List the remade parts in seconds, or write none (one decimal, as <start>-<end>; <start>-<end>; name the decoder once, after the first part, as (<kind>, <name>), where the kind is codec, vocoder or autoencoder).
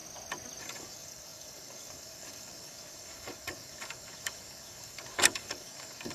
0.6-6.1 (codec, DAC)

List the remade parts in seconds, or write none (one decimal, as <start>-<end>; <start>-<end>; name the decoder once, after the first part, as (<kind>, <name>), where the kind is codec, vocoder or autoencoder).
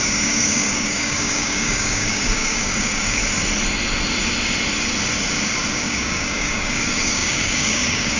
0.0-3.2 (codec, DAC); 5.7-8.2